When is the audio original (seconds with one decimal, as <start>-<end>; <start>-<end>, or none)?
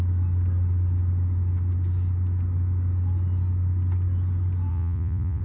0.0-4.7